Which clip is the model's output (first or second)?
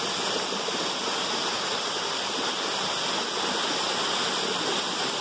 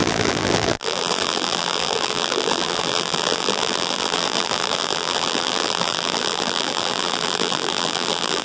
second